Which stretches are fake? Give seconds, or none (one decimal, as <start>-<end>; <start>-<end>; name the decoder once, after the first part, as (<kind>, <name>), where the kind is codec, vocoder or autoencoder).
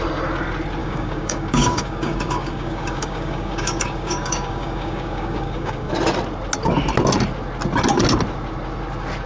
0.8-5.9 (codec, DAC)